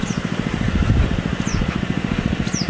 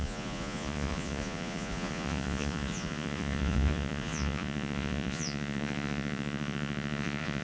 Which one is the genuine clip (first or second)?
first